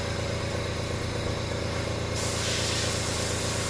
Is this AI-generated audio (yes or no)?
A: no